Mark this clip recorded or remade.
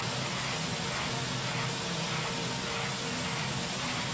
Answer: recorded